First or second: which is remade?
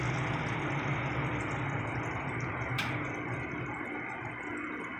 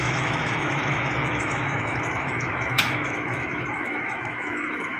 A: second